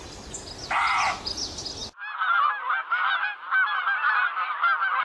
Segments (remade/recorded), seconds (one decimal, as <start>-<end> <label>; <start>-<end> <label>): 0.0-5.0 recorded